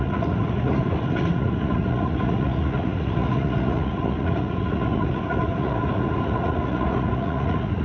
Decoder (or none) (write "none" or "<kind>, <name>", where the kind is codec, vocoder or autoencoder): vocoder, Vocos